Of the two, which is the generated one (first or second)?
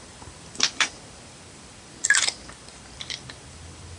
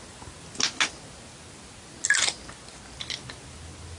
first